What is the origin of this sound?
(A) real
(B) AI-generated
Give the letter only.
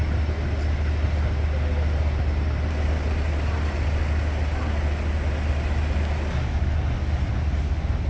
A